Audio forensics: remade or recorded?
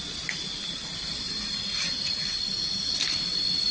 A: recorded